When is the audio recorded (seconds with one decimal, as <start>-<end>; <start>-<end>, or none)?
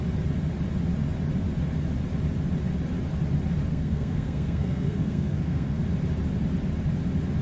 0.0-3.7; 5.8-7.4